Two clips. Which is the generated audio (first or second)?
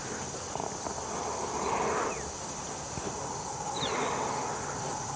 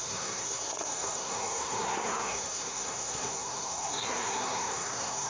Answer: second